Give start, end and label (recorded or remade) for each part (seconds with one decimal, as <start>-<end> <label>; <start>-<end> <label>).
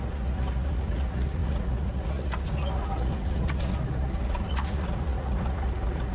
0.0-6.1 remade